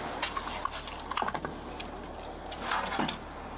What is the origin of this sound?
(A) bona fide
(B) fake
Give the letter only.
A